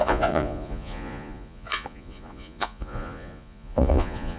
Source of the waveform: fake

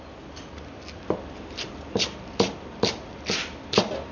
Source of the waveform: real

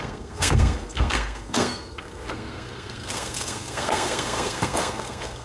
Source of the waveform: fake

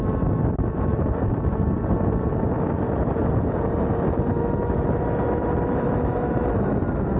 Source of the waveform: real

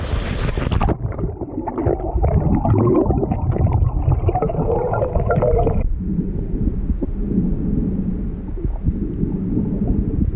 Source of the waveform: real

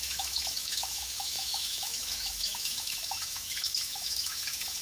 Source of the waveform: fake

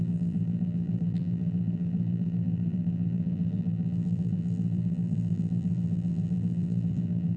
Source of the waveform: fake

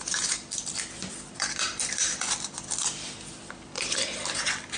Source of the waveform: fake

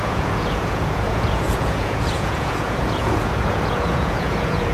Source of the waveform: fake